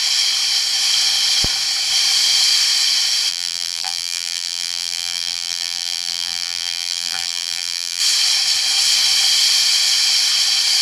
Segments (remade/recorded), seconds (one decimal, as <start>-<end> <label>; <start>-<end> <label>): 0.0-3.3 recorded; 3.3-8.0 remade; 8.0-10.8 recorded